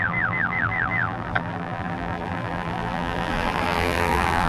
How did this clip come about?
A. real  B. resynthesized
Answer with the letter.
B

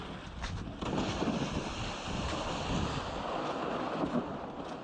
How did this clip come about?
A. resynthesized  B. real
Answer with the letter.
B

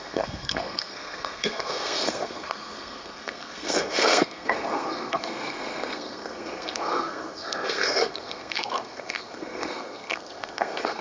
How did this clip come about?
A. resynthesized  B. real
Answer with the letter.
A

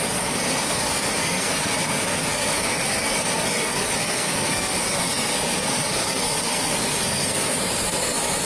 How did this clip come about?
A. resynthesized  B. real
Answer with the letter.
A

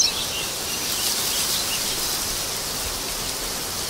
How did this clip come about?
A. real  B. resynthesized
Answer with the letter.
A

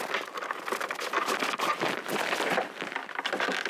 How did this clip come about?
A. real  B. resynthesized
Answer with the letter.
A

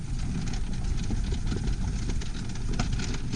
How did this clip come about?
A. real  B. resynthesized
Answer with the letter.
A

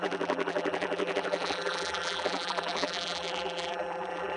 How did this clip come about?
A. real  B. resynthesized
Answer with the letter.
B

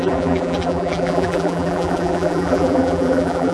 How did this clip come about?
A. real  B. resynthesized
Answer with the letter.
B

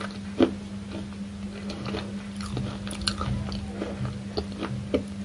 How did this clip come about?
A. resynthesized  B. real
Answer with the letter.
B